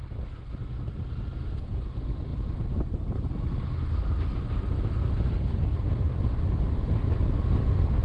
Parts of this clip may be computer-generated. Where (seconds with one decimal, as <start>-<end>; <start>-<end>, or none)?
5.7-6.8